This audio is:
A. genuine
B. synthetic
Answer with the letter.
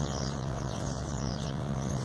B